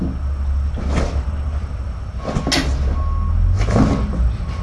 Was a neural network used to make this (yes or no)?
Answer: no